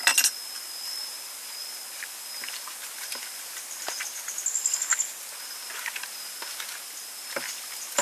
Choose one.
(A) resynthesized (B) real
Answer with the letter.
B